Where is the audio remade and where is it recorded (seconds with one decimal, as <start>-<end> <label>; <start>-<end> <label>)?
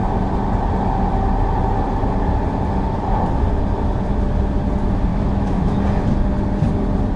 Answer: 0.0-5.1 recorded; 5.1-5.8 remade; 5.8-7.2 recorded